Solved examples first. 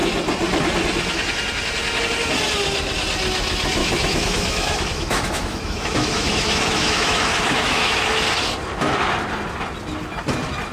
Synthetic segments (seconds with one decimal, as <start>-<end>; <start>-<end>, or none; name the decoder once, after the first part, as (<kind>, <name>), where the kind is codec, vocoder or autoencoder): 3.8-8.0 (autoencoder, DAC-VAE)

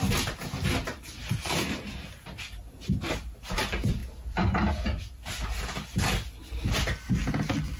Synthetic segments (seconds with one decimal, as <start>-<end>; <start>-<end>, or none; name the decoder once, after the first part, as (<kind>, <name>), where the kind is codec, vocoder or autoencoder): none

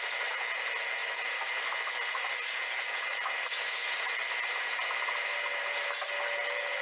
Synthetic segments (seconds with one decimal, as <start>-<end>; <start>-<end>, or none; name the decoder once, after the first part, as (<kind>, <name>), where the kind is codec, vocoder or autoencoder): none

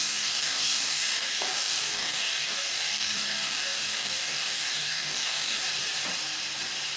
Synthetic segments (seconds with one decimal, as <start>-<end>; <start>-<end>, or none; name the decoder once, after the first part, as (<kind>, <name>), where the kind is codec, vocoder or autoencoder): 0.0-5.6 (codec, DAC)